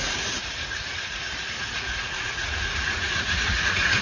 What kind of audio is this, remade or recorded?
remade